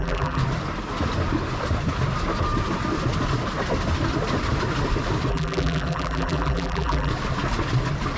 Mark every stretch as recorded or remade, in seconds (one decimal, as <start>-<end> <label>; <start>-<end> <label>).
0.0-0.4 remade; 0.4-5.3 recorded; 5.3-7.1 remade; 7.1-8.2 recorded